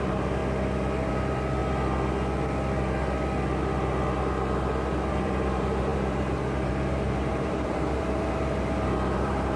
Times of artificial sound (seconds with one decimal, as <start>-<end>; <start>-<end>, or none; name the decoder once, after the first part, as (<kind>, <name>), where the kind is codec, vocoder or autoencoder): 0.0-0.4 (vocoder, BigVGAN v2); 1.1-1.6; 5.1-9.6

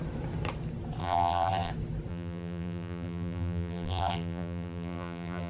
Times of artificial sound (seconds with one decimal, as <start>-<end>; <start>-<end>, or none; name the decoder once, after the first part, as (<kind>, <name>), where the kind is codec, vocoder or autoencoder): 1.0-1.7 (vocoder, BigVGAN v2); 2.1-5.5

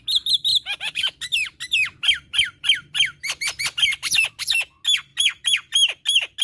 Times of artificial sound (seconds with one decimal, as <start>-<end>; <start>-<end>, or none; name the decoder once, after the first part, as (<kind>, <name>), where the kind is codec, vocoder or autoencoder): 0.5-4.3 (vocoder, BigVGAN v2)

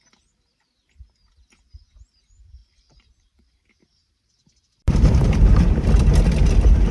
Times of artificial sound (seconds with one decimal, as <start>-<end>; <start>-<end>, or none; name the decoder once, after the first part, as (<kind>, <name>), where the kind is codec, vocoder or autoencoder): 2.6-5.9 (vocoder, BigVGAN v2)